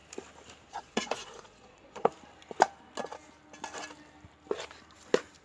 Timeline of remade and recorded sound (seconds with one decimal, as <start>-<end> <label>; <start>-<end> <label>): 0.0-0.7 recorded; 0.7-2.1 remade; 2.1-5.4 recorded